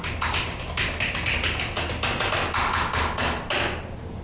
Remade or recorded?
recorded